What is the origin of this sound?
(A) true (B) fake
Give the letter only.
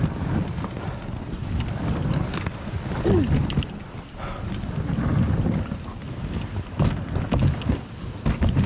A